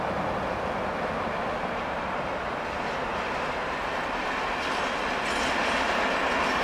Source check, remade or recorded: recorded